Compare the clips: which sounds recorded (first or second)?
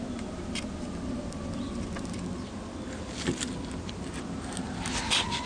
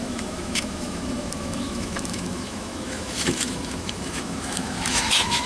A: first